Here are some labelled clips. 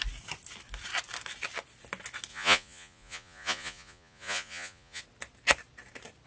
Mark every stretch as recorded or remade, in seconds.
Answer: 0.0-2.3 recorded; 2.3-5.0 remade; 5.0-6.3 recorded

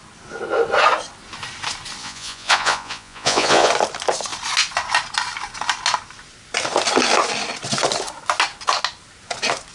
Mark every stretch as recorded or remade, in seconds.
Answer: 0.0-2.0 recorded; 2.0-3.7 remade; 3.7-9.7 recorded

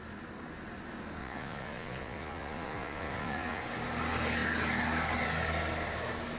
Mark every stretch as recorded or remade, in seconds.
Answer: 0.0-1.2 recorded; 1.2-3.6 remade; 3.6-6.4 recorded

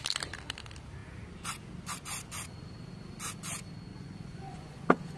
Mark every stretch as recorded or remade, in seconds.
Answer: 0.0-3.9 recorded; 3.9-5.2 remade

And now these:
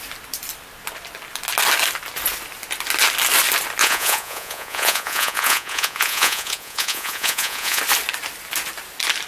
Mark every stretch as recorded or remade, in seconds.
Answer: 0.0-3.8 recorded; 3.8-7.8 remade; 7.8-9.3 recorded